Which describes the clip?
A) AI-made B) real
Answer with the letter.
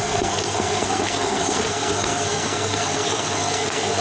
A